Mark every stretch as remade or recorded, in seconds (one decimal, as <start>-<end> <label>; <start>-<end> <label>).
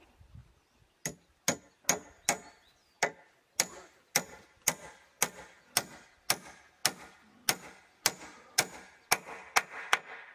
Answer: 0.0-10.3 recorded